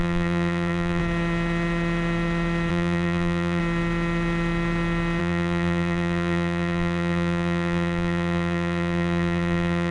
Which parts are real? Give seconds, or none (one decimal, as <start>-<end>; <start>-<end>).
1.0-2.7; 3.6-5.2